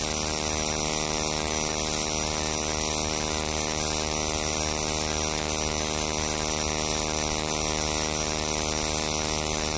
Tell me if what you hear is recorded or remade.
recorded